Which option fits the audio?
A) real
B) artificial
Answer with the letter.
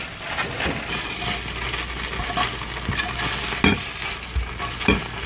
A